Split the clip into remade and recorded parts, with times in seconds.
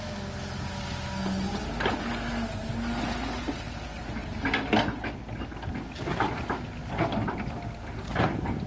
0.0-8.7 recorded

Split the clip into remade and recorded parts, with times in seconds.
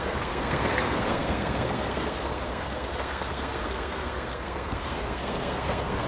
0.0-6.1 remade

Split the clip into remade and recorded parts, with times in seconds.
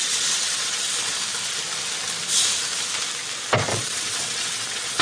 0.0-0.9 remade; 0.9-3.7 recorded; 3.7-5.0 remade